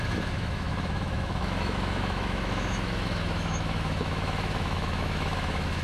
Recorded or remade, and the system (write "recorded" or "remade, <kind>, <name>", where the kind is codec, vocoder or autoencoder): remade, autoencoder, DAC-VAE